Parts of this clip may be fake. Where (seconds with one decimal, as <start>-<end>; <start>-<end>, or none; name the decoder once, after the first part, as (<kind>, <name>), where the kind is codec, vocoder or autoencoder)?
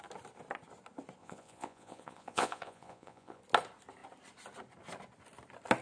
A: 1.2-3.4 (vocoder, Vocos)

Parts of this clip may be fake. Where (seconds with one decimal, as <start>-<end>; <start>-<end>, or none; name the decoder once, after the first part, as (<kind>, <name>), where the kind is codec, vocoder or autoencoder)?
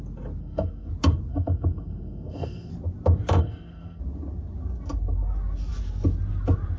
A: 0.4-0.9 (codec, SNAC); 1.3-2.7; 3.4-4.0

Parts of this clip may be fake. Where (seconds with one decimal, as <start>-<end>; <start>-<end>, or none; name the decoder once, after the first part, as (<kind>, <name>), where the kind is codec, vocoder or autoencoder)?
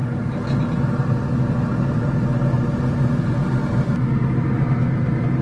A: none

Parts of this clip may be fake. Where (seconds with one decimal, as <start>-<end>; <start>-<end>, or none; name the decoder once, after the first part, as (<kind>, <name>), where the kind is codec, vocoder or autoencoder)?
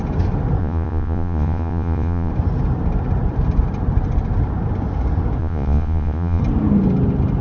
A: 0.6-2.3 (vocoder, Vocos); 5.4-6.4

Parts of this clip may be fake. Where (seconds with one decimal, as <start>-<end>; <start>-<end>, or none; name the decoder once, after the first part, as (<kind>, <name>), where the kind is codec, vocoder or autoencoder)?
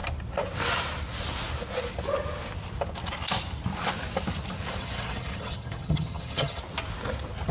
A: 4.8-6.6 (vocoder, HiFi-GAN)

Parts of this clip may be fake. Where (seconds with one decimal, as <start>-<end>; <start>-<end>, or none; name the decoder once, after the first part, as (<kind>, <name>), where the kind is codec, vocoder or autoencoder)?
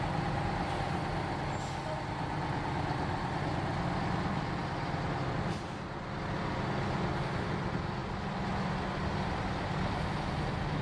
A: none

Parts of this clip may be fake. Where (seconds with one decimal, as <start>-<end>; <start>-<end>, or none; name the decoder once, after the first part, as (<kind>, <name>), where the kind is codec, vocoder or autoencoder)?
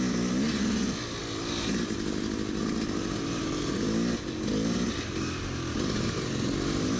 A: none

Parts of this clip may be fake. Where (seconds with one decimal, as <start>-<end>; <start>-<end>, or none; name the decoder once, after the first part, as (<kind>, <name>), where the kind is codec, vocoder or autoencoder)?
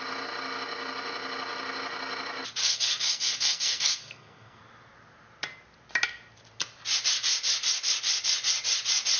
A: 2.6-4.6 (codec, SNAC)